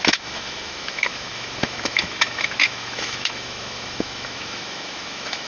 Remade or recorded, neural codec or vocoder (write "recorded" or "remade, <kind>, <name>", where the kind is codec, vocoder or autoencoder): remade, autoencoder, DAC-VAE